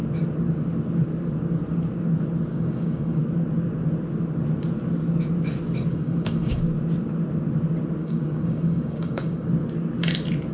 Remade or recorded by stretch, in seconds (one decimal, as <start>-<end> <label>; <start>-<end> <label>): 0.0-2.5 recorded; 2.5-3.2 remade; 3.2-5.9 recorded; 5.9-6.6 remade; 6.6-8.0 recorded; 8.0-9.5 remade; 9.5-10.5 recorded